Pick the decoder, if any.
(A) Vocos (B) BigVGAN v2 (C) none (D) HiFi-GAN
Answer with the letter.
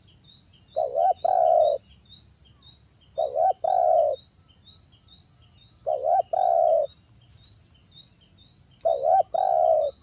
C